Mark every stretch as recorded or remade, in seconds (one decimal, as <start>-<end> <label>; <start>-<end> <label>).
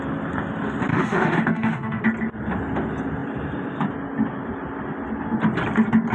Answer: 0.0-0.9 recorded; 0.9-2.0 remade; 2.0-6.1 recorded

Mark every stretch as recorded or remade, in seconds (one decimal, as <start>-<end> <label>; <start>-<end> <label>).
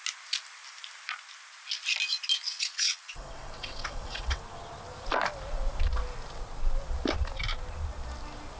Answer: 0.0-2.5 recorded; 2.5-4.4 remade; 4.4-8.6 recorded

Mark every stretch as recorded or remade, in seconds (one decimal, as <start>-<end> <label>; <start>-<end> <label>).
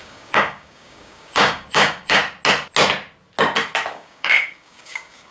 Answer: 0.0-2.2 remade; 2.2-3.9 recorded; 3.9-5.3 remade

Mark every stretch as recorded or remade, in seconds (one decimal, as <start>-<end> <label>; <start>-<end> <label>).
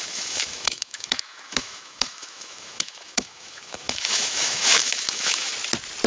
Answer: 0.0-5.5 remade; 5.5-6.1 recorded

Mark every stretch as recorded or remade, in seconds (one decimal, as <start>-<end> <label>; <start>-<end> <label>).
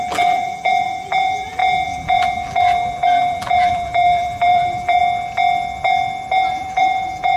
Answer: 0.0-5.0 remade; 5.0-6.5 recorded; 6.5-7.4 remade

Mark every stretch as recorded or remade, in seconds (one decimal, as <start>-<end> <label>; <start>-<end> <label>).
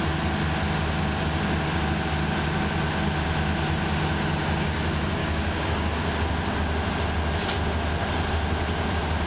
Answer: 0.0-5.2 recorded; 5.2-5.9 remade; 5.9-9.3 recorded